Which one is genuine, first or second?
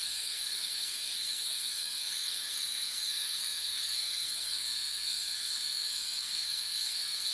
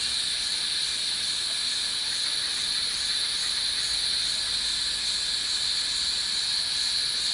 second